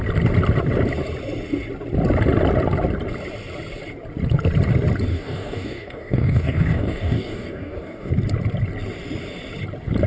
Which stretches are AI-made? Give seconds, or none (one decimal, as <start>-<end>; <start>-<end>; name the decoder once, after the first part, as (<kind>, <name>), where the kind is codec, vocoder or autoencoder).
5.1-8.1 (codec, DAC)